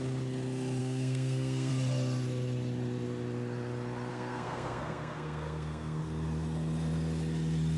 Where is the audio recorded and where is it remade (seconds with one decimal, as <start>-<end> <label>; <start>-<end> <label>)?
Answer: 0.0-0.8 recorded; 0.8-1.7 remade; 1.7-4.1 recorded; 4.1-6.0 remade; 6.0-7.8 recorded